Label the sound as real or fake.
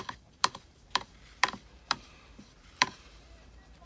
fake